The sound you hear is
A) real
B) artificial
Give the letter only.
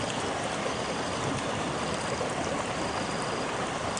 A